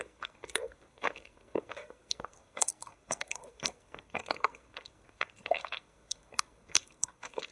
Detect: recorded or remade remade